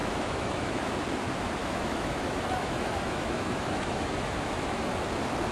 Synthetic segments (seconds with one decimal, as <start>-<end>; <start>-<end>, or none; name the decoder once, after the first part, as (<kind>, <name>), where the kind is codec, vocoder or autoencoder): 0.0-0.9 (autoencoder, DAC-VAE); 1.6-4.9